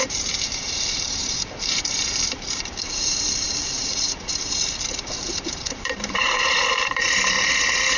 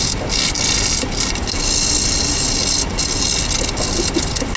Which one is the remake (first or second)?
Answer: first